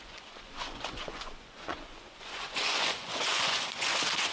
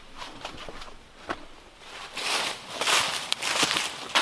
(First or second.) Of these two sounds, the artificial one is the first